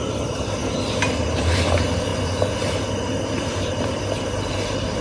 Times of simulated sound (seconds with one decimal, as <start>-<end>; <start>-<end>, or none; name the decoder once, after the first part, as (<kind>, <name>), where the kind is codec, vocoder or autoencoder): 0.0-0.6 (vocoder, BigVGAN v2); 1.2-2.1; 3.5-5.0